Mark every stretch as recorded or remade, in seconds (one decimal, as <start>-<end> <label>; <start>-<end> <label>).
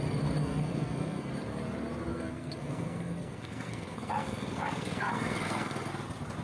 0.0-0.4 recorded; 0.4-1.3 remade; 1.3-2.1 recorded; 2.1-5.9 remade; 5.9-6.4 recorded